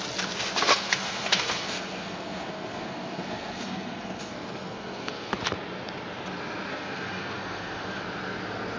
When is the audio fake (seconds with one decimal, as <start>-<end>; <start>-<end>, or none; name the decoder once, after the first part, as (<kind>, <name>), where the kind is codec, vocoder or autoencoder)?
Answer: 0.7-5.3 (codec, SNAC); 6.7-8.0